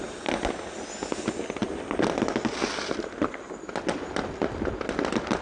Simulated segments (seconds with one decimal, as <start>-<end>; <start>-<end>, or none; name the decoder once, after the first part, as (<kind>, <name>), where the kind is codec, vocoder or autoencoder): none